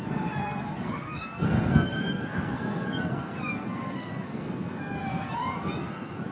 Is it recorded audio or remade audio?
remade